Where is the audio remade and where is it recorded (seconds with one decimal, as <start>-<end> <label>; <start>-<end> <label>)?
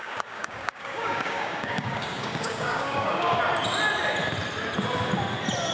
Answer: 0.0-3.4 remade; 3.4-5.7 recorded